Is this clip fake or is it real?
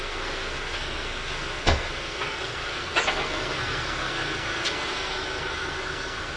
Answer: fake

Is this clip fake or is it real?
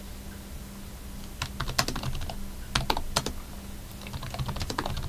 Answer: real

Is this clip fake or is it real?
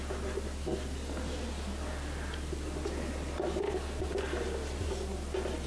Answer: real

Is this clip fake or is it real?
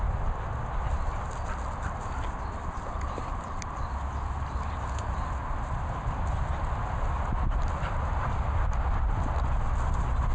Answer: real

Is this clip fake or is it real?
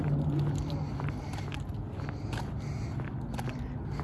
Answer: real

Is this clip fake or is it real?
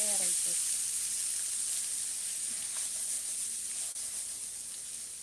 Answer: real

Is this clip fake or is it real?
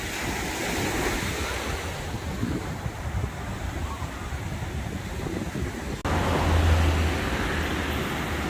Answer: real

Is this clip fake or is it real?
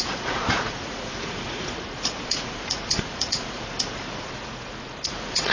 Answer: fake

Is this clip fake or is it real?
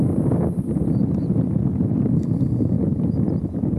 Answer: real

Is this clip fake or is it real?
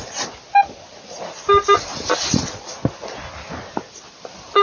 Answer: real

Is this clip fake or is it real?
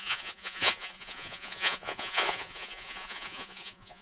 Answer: fake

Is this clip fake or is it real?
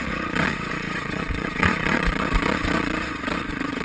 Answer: fake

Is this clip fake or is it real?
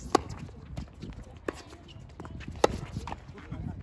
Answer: real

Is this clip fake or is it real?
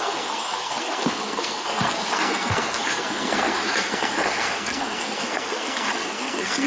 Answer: fake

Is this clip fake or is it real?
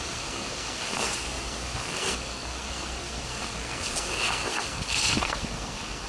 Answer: fake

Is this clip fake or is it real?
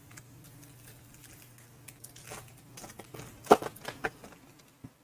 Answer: real